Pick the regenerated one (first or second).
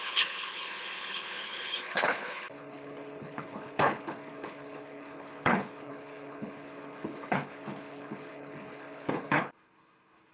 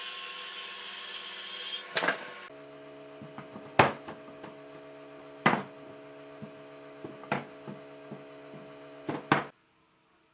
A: first